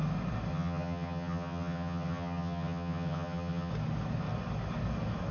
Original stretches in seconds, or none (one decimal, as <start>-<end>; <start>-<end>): 0.0-0.5; 3.7-5.3